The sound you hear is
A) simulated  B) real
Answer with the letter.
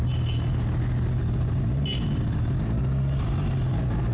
B